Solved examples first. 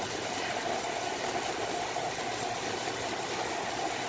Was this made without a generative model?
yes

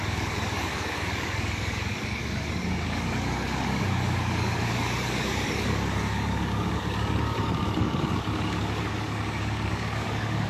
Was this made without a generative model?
no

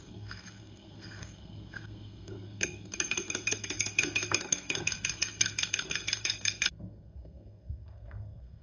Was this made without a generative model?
no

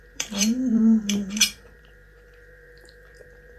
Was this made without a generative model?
no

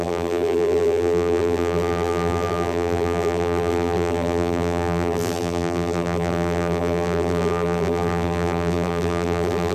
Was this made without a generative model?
no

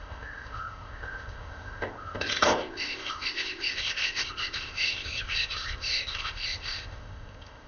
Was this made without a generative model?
no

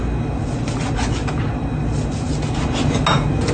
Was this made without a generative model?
yes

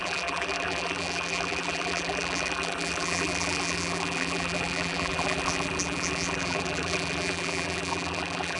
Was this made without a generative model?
no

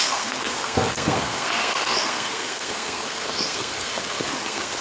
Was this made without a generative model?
no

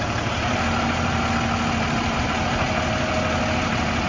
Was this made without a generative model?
yes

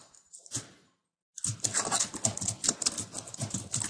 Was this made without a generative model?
yes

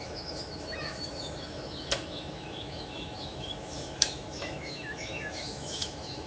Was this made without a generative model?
no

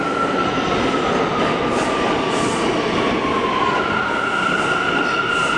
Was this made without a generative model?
yes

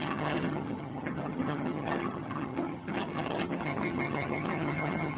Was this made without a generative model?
no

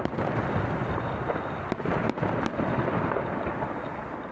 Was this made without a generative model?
yes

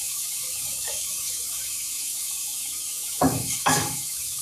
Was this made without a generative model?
no